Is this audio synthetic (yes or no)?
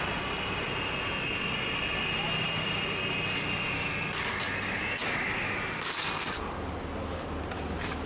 no